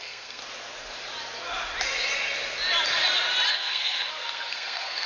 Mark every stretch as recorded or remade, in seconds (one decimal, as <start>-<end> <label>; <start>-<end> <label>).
0.0-0.4 remade; 0.4-3.5 recorded; 3.5-5.1 remade